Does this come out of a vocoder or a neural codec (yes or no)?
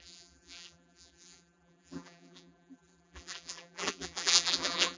yes